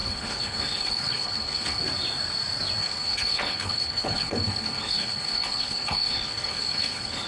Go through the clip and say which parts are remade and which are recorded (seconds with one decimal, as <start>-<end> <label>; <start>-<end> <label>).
0.0-1.8 remade; 1.8-2.8 recorded; 2.8-7.3 remade